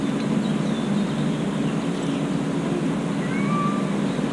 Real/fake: real